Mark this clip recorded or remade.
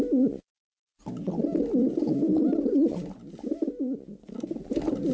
recorded